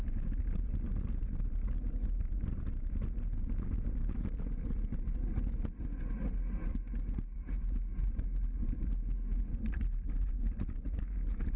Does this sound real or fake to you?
real